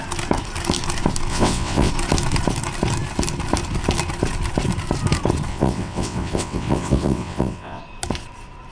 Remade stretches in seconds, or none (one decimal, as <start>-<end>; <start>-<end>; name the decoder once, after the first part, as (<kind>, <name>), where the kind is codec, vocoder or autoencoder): 1.3-1.9 (vocoder, WaveNeXt); 5.5-7.8